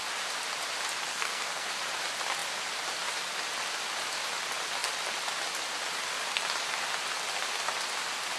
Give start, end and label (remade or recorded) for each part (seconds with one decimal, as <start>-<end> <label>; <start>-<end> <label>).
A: 0.0-1.1 recorded; 1.1-1.7 remade; 1.7-8.4 recorded

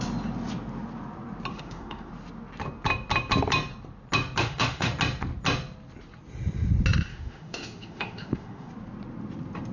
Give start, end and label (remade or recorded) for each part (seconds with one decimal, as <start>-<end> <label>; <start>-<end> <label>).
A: 0.0-1.5 recorded; 1.5-2.1 remade; 2.1-4.4 recorded; 4.4-4.9 remade; 4.9-7.1 recorded; 7.1-8.7 remade; 8.7-9.7 recorded

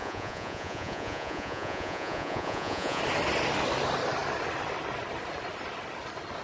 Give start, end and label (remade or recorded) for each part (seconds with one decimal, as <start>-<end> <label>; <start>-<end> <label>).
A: 0.0-3.0 remade; 3.0-6.4 recorded